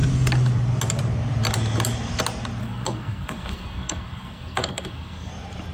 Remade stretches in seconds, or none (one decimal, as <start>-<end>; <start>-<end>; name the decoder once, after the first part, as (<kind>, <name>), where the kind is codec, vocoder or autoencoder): 2.6-5.3 (codec, SNAC)